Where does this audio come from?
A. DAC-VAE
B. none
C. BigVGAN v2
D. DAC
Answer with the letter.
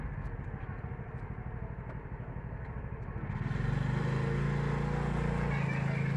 B